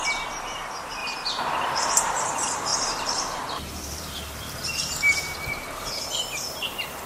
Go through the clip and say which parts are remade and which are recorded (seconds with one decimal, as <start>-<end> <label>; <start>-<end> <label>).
0.0-7.1 remade